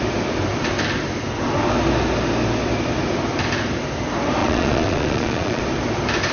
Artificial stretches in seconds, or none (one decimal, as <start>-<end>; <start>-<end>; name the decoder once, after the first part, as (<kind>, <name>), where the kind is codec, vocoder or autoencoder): 4.4-5.6 (vocoder, Vocos)